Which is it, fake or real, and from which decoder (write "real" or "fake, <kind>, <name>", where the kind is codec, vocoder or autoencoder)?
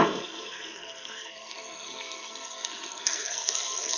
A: fake, codec, SNAC